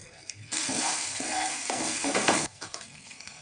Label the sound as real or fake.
fake